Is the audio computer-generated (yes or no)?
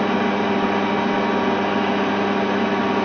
no